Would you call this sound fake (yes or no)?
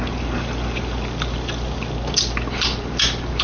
no